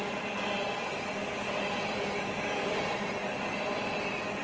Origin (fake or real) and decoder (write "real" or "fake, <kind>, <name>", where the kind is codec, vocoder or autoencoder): real